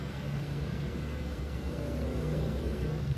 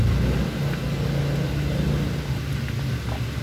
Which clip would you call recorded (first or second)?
second